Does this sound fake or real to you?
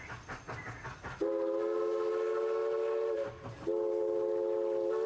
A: real